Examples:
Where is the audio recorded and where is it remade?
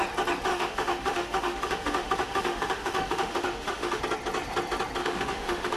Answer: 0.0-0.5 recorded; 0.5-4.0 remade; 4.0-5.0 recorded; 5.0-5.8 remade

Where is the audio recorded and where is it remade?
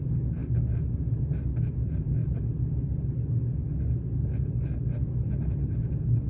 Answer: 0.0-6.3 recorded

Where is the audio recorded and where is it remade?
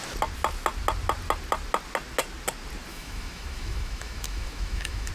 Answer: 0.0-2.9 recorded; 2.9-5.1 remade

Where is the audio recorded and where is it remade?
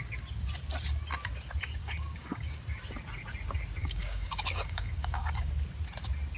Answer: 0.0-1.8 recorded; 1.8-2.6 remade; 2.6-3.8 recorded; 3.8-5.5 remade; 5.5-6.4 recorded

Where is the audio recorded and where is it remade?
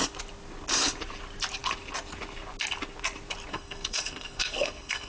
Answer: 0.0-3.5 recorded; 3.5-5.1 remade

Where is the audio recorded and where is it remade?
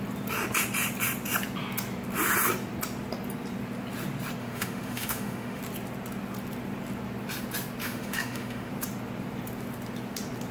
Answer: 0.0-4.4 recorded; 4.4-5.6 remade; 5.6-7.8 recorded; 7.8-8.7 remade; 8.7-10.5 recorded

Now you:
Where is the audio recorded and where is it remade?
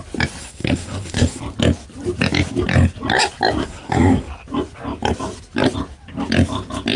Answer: 0.0-0.4 recorded; 0.4-1.4 remade; 1.4-3.6 recorded; 3.6-4.3 remade; 4.3-7.0 recorded